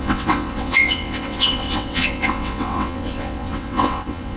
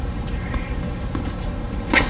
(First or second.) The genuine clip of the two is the second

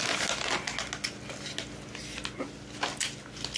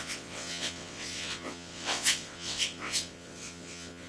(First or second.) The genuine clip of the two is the first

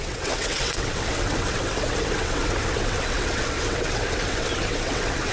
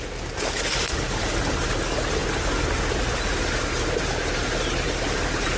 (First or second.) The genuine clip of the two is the second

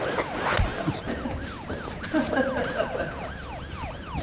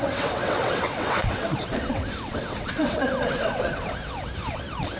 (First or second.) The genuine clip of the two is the first